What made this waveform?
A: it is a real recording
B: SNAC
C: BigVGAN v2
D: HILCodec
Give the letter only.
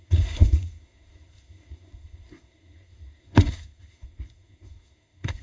B